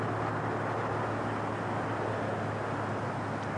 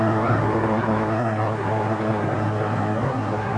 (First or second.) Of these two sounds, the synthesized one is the second